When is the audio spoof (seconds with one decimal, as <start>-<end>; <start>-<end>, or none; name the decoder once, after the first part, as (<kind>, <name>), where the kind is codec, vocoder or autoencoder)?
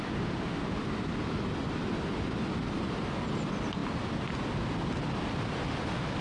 none